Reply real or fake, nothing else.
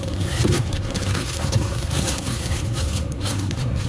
fake